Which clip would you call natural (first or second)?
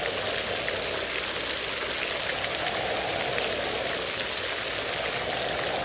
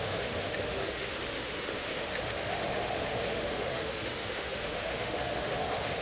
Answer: first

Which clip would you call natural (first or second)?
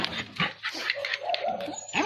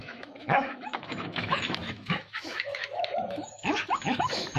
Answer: first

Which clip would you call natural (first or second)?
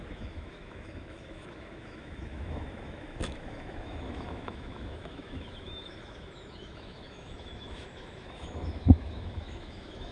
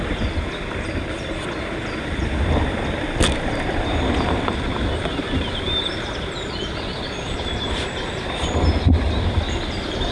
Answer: second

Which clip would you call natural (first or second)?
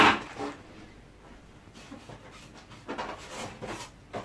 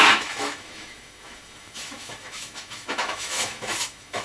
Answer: first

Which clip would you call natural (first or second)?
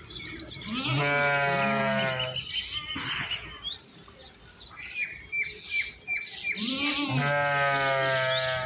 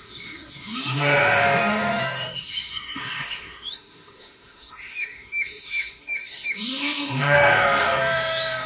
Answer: first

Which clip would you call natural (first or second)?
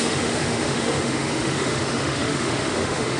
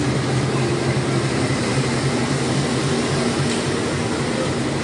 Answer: second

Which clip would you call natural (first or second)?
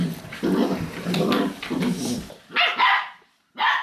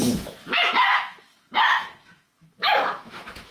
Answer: first